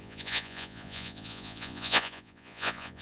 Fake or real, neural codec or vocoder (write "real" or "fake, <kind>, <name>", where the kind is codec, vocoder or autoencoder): fake, vocoder, Vocos